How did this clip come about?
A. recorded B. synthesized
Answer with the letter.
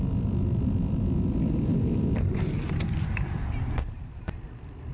A